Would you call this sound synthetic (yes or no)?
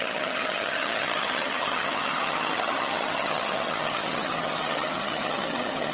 yes